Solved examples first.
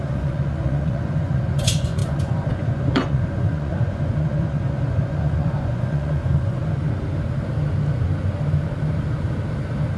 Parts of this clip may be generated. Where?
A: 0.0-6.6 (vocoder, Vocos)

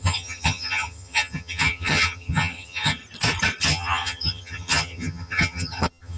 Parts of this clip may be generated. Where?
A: 0.0-3.0 (vocoder, HiFi-GAN); 3.6-6.2

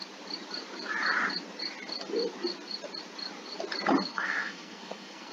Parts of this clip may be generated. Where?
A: 4.1-5.3 (codec, SNAC)

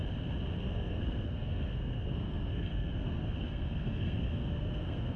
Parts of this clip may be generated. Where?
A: 0.6-5.2 (codec, SNAC)